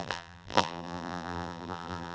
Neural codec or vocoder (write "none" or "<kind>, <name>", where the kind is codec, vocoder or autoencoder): vocoder, BigVGAN v2